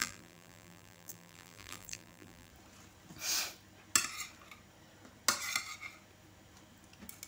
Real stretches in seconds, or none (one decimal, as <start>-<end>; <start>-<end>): 2.5-7.3

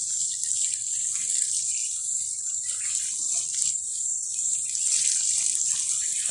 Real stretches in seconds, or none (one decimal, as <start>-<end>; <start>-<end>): 0.0-1.8; 5.6-6.3